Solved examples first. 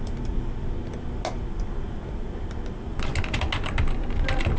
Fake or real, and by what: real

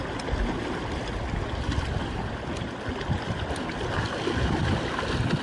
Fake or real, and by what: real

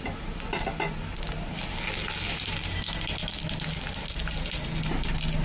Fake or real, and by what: real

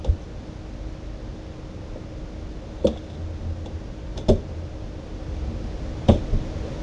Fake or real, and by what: real